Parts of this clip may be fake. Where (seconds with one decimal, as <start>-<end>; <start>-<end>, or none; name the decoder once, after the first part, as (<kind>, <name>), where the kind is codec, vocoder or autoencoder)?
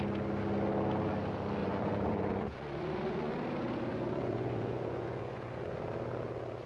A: 1.6-3.3 (vocoder, Vocos); 3.9-5.8